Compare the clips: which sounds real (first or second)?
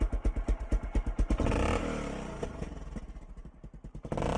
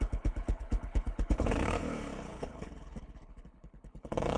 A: first